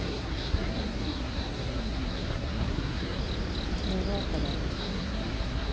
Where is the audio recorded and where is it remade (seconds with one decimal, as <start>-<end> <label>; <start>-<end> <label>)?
0.0-3.2 remade; 3.2-4.7 recorded; 4.7-5.7 remade